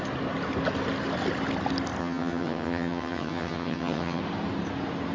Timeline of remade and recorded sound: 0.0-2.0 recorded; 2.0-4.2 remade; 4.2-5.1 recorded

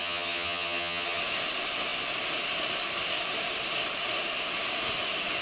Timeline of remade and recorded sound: 0.0-1.2 remade; 1.2-5.4 recorded